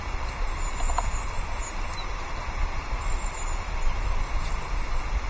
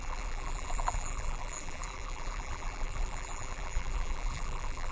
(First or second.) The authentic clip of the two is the first